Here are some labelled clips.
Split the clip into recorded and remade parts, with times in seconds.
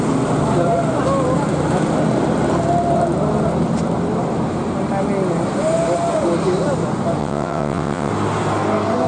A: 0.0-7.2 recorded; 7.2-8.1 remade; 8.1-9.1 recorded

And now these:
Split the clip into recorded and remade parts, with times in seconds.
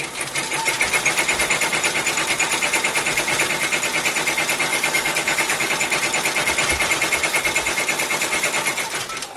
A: 0.0-4.7 recorded; 4.7-5.7 remade; 5.7-9.4 recorded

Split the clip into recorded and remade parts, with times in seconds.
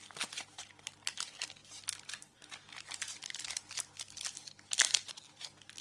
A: 0.0-5.8 recorded